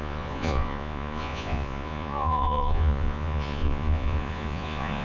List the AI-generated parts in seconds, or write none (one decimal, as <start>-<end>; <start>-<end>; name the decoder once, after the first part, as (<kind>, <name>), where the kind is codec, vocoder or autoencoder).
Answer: 0.0-5.0 (vocoder, Vocos)